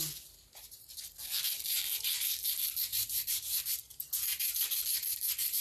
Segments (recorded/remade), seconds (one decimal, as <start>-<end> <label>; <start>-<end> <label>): 0.0-2.9 recorded; 2.9-4.2 remade; 4.2-5.6 recorded